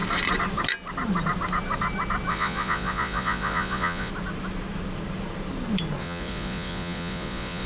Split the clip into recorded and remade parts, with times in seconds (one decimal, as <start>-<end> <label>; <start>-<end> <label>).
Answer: 0.0-2.3 recorded; 2.3-4.1 remade; 4.1-6.0 recorded; 6.0-7.7 remade

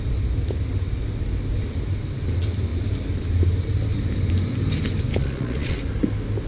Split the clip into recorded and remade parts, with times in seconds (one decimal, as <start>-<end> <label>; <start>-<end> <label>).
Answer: 0.0-5.1 recorded; 5.1-5.8 remade; 5.8-6.5 recorded

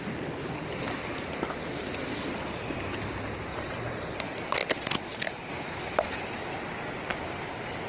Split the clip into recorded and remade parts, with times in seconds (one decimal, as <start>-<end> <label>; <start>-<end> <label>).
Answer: 0.0-3.5 recorded; 3.5-4.1 remade; 4.1-7.9 recorded

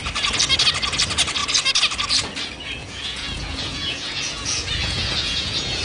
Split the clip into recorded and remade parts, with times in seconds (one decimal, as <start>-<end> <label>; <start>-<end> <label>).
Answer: 0.0-2.8 recorded; 2.8-5.8 remade